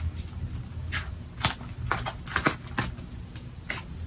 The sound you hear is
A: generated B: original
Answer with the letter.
B